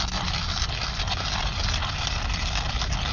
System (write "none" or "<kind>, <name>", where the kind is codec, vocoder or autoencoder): none